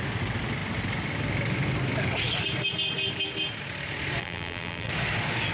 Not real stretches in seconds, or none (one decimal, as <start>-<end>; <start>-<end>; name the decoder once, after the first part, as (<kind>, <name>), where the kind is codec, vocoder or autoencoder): 4.2-4.9 (vocoder, BigVGAN v2)